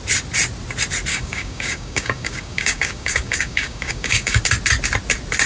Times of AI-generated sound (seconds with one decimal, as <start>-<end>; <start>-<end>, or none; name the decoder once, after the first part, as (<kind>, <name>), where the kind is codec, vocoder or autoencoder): 1.1-4.4 (codec, DAC)